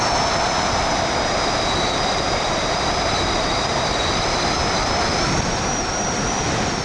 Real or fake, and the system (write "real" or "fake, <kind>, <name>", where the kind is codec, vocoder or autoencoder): fake, vocoder, BigVGAN v2